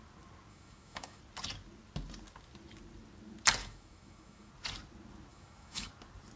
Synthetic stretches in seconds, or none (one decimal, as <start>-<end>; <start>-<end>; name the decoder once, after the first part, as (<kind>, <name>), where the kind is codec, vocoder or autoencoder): 0.5-1.2 (autoencoder, DAC-VAE); 3.6-4.5; 5.3-5.9